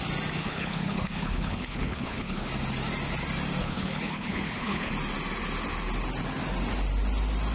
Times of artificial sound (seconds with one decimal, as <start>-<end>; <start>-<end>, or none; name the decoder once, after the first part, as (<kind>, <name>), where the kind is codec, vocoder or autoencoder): 0.4-2.5 (codec, HILCodec); 3.6-4.9